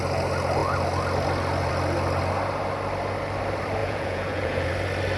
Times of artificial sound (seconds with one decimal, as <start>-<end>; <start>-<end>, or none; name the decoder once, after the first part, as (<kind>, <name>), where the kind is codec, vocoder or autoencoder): 3.8-4.7 (vocoder, Vocos)